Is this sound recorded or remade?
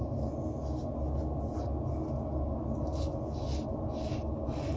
recorded